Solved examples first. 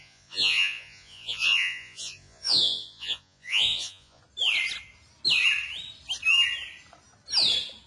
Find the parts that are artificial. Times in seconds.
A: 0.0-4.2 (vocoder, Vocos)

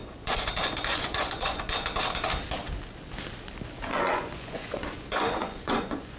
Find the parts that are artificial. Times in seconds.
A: 0.0-0.5 (vocoder, Vocos); 0.9-1.7; 3.9-6.2